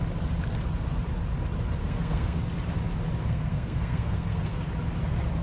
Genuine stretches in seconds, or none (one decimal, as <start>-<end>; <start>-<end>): 0.0-1.8; 2.4-3.2; 4.6-5.4